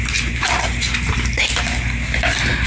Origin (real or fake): real